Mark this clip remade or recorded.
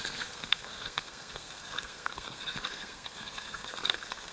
remade